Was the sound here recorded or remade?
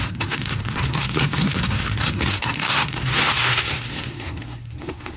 remade